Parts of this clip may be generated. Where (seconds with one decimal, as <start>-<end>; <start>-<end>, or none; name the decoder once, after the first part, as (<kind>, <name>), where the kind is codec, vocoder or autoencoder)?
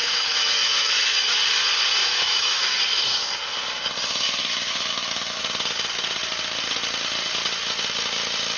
0.0-1.3 (autoencoder, DAC-VAE); 2.0-2.6; 4.4-5.4